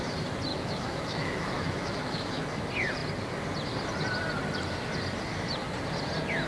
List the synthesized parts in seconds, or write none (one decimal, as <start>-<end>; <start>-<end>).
0.5-2.4

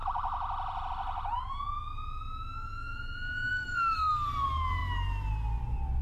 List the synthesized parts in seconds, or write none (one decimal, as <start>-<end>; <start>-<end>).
3.5-4.3

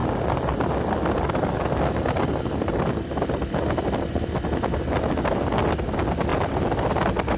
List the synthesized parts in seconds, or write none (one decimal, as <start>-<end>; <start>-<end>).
none

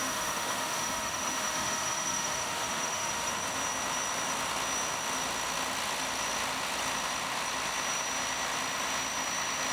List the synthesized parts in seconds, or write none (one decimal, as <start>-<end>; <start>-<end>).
0.0-3.3

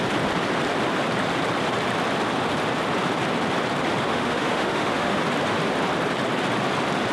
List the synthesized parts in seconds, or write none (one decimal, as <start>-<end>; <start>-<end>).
4.1-5.2

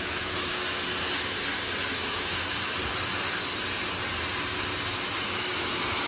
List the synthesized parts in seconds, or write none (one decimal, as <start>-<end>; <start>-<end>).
0.0-0.5; 1.9-2.8; 5.3-6.1

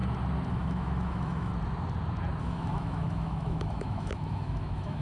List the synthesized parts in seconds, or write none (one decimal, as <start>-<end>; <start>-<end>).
0.5-1.5; 2.4-5.0

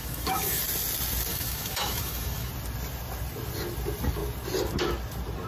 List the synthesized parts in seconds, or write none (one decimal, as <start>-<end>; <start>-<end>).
0.0-0.6; 1.3-2.5